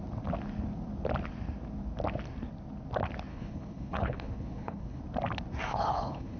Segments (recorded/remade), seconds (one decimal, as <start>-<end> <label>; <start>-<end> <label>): 0.0-3.3 recorded; 3.3-5.0 remade; 5.0-5.7 recorded; 5.7-6.4 remade

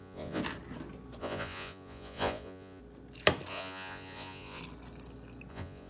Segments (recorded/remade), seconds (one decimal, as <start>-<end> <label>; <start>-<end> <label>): 0.0-0.4 remade; 0.4-1.2 recorded; 1.2-2.8 remade; 2.8-3.5 recorded; 3.5-4.6 remade; 4.6-5.5 recorded; 5.5-5.9 remade

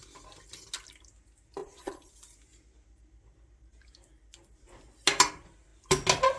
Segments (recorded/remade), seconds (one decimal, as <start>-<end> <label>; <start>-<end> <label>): 0.0-1.6 recorded; 1.6-2.1 remade; 2.1-6.4 recorded

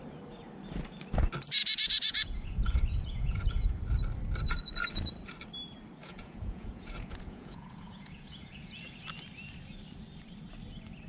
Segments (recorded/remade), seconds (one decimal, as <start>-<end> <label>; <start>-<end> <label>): 0.0-1.6 recorded; 1.6-3.8 remade; 3.8-6.0 recorded; 6.0-9.0 remade; 9.0-11.1 recorded

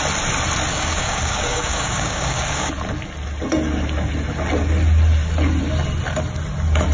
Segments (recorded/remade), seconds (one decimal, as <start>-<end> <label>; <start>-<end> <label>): 0.0-0.7 recorded; 0.7-2.7 remade; 2.7-6.9 recorded